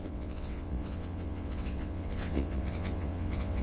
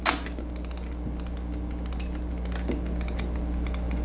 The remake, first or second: first